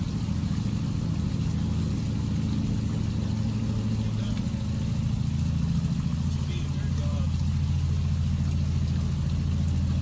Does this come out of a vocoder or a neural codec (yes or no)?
no